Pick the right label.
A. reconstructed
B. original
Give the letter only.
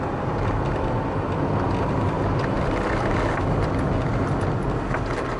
B